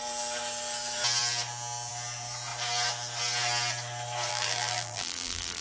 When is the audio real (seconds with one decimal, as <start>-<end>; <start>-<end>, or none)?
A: 0.0-4.3